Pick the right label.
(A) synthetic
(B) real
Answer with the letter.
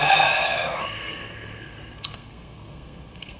A